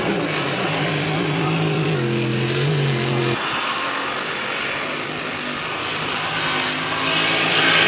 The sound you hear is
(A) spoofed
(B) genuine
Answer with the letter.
B